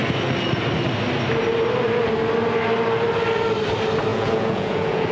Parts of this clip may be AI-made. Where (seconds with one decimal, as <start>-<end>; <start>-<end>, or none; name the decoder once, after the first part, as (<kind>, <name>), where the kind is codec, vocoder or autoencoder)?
4.1-5.1 (vocoder, Vocos)